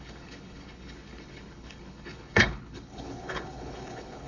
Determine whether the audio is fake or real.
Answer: fake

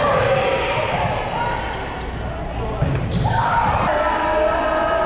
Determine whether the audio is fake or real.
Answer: real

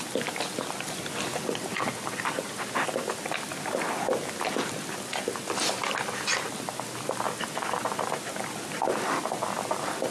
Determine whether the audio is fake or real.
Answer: real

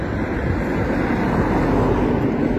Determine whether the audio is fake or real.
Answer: real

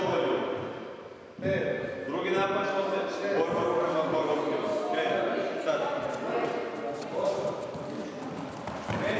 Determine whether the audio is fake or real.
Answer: real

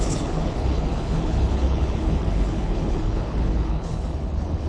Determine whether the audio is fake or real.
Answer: fake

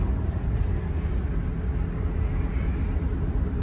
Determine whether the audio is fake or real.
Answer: real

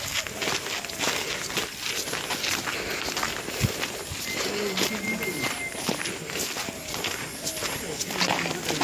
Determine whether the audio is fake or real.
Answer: real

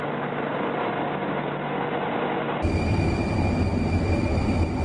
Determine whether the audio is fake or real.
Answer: real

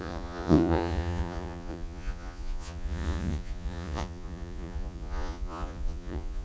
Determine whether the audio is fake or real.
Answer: fake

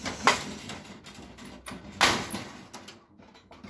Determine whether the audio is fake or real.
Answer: real